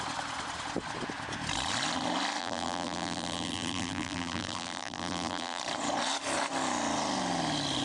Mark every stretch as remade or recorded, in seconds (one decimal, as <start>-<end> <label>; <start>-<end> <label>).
0.0-2.4 recorded; 2.4-5.6 remade; 5.6-7.8 recorded